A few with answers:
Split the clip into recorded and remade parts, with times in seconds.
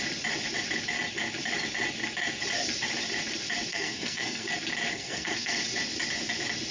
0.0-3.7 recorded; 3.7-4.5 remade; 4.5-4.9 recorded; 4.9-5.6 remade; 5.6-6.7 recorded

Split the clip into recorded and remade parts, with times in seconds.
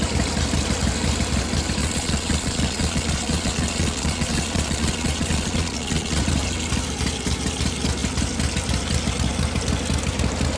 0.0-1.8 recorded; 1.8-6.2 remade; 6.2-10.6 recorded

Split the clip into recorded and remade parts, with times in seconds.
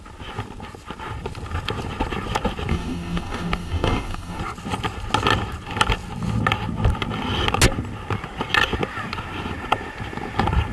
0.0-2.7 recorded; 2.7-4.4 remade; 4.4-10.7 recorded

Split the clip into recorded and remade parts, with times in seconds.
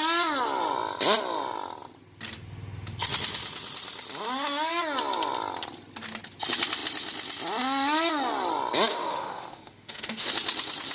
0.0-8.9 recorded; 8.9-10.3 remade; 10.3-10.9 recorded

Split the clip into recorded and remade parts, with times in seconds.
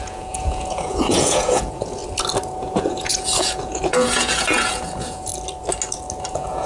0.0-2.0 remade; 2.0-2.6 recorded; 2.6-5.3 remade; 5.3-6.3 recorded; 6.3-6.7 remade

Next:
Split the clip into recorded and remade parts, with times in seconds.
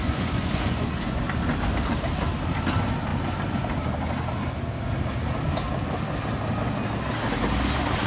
0.0-1.2 remade; 1.2-8.1 recorded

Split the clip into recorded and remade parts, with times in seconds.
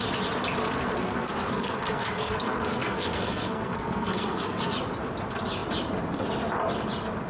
0.0-0.6 recorded; 0.6-4.7 remade; 4.7-7.3 recorded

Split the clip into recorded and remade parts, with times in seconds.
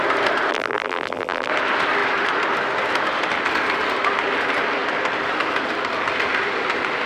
0.0-0.5 recorded; 0.5-1.5 remade; 1.5-7.1 recorded